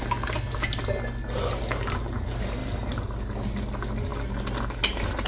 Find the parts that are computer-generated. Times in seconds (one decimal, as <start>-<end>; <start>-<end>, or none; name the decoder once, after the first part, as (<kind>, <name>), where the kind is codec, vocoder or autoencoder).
none

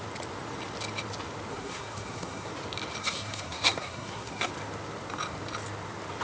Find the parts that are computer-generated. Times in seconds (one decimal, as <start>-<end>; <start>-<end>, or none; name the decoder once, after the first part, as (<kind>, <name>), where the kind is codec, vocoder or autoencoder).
1.5-2.5 (codec, SNAC); 3.0-4.5

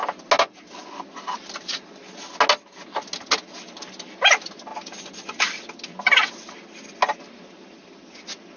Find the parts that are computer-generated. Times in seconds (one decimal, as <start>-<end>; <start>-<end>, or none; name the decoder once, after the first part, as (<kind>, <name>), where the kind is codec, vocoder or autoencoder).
none

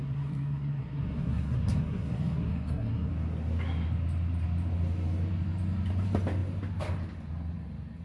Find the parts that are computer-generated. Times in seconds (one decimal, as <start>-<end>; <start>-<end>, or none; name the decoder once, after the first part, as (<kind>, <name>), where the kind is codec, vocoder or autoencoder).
0.0-3.1 (codec, SNAC)

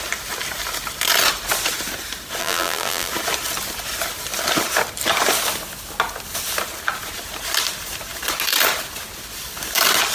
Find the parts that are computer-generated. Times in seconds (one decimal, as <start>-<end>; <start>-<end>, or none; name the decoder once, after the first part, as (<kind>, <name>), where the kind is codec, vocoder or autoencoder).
2.4-3.1 (vocoder, BigVGAN v2)